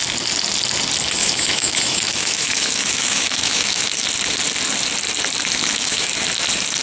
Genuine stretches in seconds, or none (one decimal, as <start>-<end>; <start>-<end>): 0.0-1.2; 3.9-5.6; 6.1-6.8